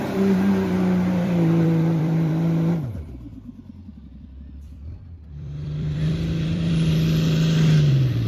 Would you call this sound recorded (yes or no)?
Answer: no